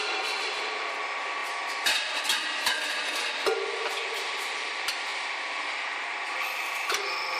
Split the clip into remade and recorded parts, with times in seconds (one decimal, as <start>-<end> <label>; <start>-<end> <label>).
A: 0.0-7.4 recorded